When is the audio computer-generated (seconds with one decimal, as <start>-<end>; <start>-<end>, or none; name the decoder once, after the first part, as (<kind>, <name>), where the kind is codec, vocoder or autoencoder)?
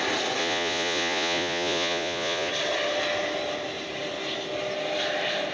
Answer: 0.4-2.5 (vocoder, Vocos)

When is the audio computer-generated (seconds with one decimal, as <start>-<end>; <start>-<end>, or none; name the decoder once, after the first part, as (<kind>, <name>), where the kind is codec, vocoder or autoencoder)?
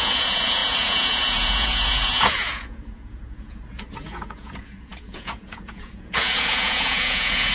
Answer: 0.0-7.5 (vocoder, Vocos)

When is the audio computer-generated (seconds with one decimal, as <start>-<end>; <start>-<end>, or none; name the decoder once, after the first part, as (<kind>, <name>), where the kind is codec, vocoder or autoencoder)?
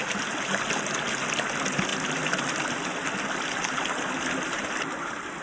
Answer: none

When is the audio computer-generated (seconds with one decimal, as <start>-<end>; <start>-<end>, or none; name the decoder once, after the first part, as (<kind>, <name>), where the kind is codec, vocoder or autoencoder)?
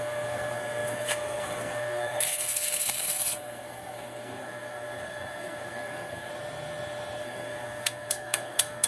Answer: 0.0-6.3 (codec, SNAC); 7.2-8.9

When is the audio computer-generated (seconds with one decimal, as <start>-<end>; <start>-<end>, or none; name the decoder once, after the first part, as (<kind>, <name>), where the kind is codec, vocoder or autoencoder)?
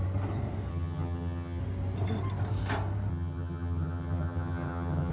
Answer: 0.7-1.6 (vocoder, HiFi-GAN); 3.1-5.1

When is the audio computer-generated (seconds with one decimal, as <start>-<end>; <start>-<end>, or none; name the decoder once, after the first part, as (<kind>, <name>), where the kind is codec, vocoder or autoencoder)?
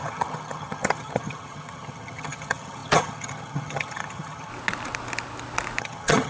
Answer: 0.0-4.5 (vocoder, HiFi-GAN); 5.8-6.3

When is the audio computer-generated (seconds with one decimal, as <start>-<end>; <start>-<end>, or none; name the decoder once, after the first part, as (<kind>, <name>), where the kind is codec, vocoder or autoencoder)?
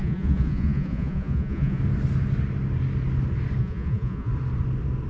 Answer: 0.0-1.8 (vocoder, Vocos); 3.6-4.3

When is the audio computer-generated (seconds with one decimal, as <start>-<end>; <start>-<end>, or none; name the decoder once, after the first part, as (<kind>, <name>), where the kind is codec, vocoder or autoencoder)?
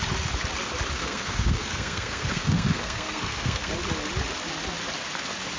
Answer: 1.0-3.7 (codec, SNAC)